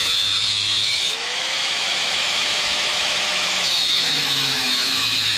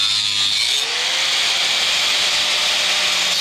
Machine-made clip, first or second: first